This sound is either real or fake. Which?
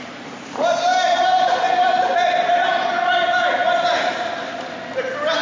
real